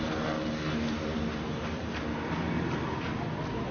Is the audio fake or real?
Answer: real